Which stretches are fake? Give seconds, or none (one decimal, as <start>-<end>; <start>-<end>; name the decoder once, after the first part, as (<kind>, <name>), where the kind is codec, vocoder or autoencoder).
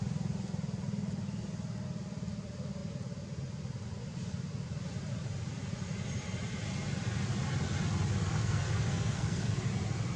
8.2-9.6 (codec, SNAC)